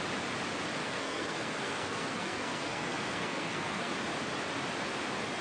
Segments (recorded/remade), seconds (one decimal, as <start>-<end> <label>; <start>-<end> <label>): 0.0-0.8 recorded; 0.8-3.9 remade; 3.9-5.4 recorded